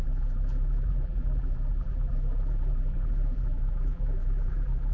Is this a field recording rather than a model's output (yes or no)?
no